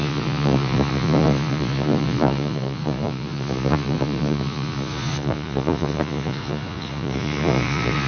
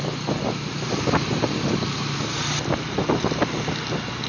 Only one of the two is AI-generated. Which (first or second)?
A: first